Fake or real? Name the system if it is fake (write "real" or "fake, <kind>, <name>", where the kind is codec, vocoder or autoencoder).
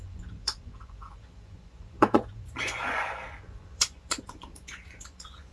fake, vocoder, Vocos